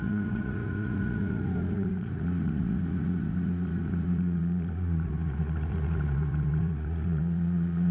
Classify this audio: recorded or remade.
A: remade